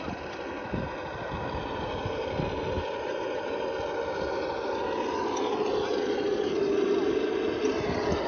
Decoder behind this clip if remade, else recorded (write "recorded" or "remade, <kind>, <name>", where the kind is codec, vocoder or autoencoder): recorded